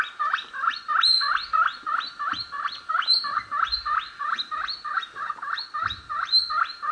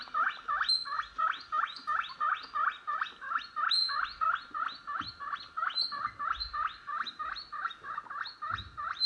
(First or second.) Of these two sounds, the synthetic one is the first